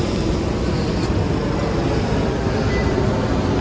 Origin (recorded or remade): recorded